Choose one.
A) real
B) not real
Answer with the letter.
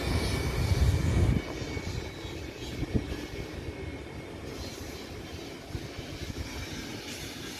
A